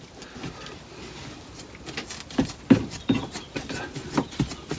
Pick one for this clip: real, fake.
real